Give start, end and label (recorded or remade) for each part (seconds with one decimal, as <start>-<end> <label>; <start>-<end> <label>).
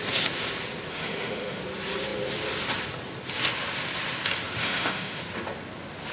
0.0-0.9 recorded; 0.9-1.6 remade; 1.6-4.6 recorded; 4.6-5.2 remade; 5.2-6.1 recorded